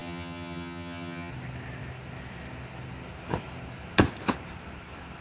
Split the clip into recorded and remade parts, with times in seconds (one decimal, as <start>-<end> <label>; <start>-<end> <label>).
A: 0.0-1.3 remade; 1.3-5.2 recorded

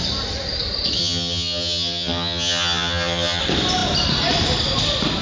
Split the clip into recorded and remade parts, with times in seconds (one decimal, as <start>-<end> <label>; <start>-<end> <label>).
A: 0.0-1.0 recorded; 1.0-3.4 remade; 3.4-5.2 recorded

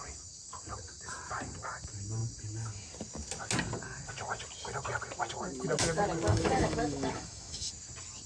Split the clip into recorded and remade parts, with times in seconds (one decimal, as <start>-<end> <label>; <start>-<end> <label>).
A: 0.0-6.3 recorded; 6.3-7.7 remade; 7.7-8.3 recorded

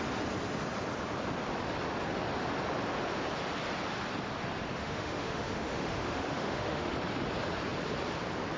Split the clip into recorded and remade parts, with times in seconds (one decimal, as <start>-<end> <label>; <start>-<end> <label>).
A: 0.0-4.8 recorded; 4.8-6.9 remade; 6.9-8.6 recorded

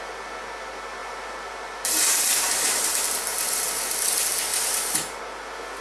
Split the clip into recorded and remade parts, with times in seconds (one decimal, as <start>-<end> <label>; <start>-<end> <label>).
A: 0.0-1.0 recorded; 1.0-4.0 remade; 4.0-4.5 recorded; 4.5-5.2 remade; 5.2-5.8 recorded

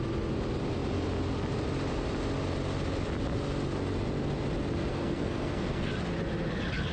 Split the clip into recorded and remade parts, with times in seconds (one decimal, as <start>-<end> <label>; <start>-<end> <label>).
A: 0.0-4.9 recorded; 4.9-5.9 remade; 5.9-6.9 recorded

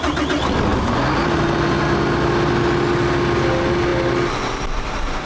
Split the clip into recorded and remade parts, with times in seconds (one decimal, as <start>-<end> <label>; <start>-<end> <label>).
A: 0.0-5.3 recorded